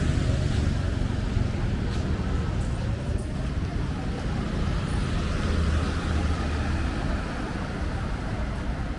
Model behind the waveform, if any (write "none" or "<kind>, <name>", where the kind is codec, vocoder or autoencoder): none